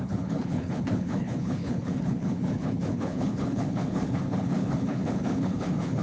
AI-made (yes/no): yes